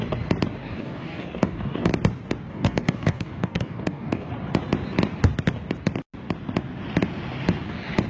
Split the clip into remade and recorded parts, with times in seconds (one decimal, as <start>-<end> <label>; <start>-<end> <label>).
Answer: 0.0-0.6 recorded; 0.6-1.9 remade; 1.9-2.5 recorded; 2.5-4.3 remade; 4.3-8.1 recorded

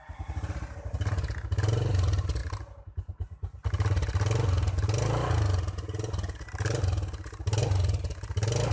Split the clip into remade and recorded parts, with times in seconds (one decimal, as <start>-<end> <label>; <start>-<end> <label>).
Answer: 0.0-8.7 recorded

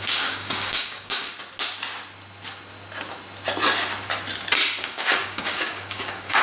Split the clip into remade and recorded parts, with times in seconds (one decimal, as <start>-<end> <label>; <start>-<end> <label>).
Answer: 0.0-1.3 remade; 1.3-4.8 recorded; 4.8-6.4 remade

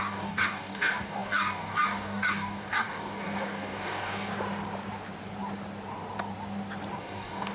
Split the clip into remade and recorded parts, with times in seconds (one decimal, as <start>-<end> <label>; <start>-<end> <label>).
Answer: 0.0-4.3 remade; 4.3-7.0 recorded; 7.0-7.5 remade

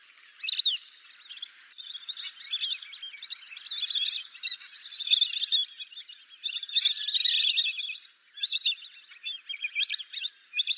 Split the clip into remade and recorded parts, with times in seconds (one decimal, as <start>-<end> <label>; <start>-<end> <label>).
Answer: 0.0-10.8 recorded

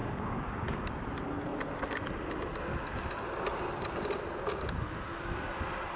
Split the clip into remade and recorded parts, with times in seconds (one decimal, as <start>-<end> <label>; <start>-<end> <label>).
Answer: 0.0-0.9 remade; 0.9-6.0 recorded

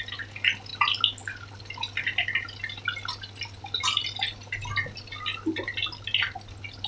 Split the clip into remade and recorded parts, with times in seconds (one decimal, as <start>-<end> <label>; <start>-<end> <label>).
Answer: 0.0-6.9 recorded

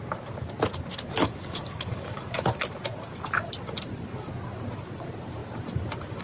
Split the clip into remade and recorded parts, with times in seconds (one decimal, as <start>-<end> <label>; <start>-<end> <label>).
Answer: 0.0-1.2 recorded; 1.2-2.6 remade; 2.6-6.2 recorded